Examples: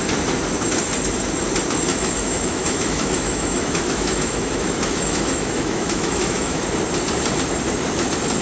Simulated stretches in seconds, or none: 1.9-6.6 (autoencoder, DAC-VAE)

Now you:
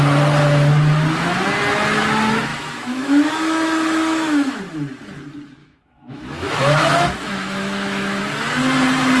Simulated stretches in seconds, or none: 2.5-4.6 (autoencoder, DAC-VAE); 5.6-8.2

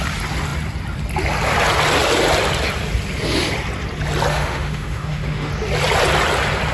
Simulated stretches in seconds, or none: 4.3-5.5 (autoencoder, DAC-VAE)